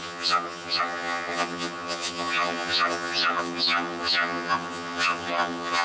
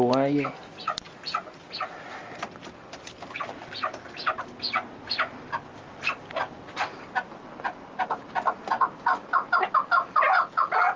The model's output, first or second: first